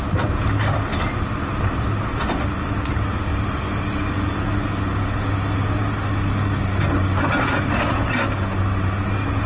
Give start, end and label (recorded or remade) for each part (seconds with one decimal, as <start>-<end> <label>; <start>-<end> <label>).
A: 0.0-0.9 recorded; 0.9-2.6 remade; 2.6-9.5 recorded